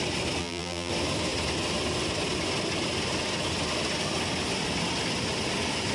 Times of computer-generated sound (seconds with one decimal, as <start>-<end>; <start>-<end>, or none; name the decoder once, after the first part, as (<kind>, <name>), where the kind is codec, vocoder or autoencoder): 0.4-0.9 (vocoder, BigVGAN v2)